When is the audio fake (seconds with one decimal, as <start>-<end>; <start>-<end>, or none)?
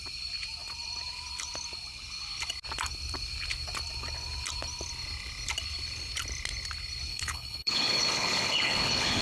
7.1-9.2